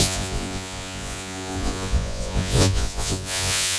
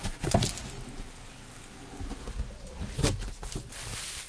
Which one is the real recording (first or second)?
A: second